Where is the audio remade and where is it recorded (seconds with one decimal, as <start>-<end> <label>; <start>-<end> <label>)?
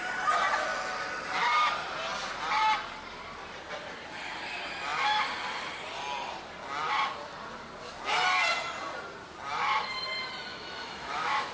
0.0-10.5 recorded; 10.5-11.5 remade